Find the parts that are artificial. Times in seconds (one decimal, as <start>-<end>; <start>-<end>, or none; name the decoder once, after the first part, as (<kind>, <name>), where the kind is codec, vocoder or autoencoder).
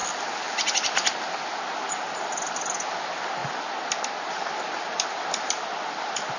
none